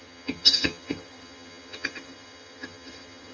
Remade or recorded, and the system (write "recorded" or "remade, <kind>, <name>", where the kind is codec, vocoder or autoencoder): remade, vocoder, HiFi-GAN